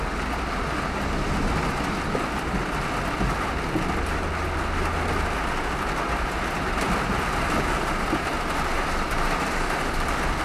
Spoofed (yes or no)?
no